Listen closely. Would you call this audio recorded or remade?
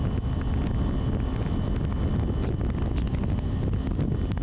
recorded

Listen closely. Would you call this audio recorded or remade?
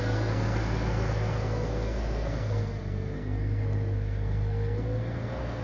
remade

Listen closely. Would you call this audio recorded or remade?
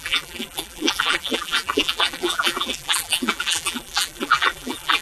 remade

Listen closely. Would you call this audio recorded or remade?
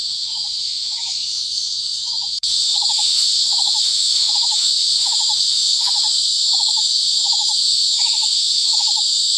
remade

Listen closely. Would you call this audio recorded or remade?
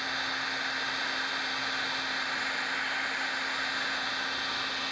recorded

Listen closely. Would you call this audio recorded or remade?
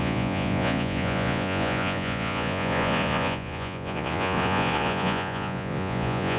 remade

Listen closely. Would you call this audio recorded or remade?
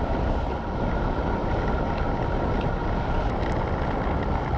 recorded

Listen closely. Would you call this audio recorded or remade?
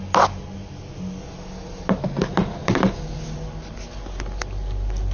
recorded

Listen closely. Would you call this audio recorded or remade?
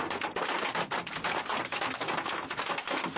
recorded